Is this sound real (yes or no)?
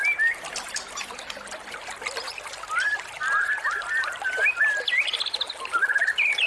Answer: yes